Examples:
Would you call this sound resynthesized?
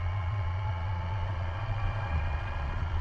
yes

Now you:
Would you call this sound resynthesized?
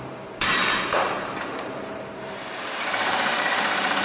yes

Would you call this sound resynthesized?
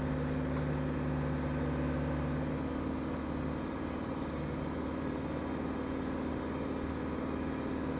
no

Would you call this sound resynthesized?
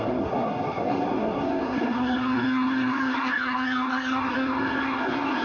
yes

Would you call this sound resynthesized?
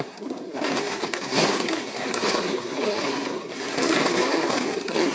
yes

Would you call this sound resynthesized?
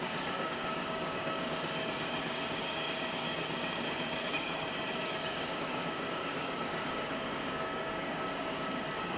yes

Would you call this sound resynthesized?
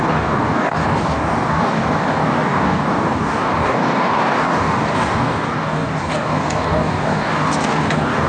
yes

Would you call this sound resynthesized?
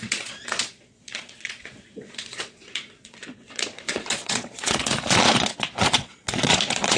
yes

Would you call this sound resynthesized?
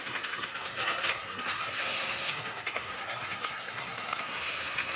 yes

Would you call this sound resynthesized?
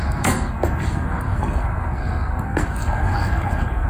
yes